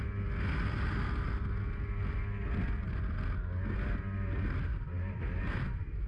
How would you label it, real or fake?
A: real